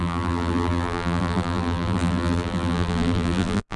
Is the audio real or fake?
fake